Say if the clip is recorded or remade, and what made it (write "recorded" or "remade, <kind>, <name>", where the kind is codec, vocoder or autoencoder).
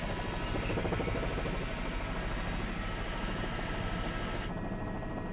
recorded